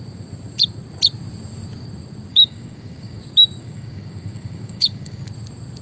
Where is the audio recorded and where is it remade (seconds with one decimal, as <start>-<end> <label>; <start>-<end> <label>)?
0.0-2.3 recorded; 2.3-3.2 remade; 3.2-3.6 recorded; 3.6-5.3 remade; 5.3-5.8 recorded